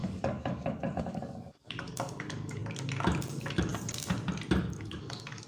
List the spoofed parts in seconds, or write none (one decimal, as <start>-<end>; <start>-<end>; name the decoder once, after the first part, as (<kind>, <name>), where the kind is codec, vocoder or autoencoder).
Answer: 0.0-2.6 (codec, DAC); 3.2-3.7; 4.6-5.5